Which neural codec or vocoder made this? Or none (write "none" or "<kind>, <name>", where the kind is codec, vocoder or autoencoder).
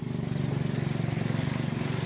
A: none